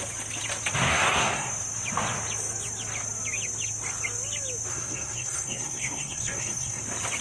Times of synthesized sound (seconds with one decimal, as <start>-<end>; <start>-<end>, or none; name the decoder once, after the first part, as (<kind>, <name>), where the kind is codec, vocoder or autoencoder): 0.9-1.5 (codec, SNAC); 4.7-6.8